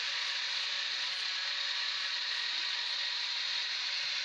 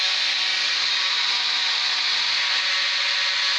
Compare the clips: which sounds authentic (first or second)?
second